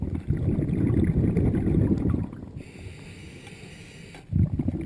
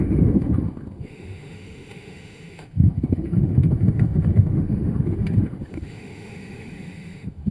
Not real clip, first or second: second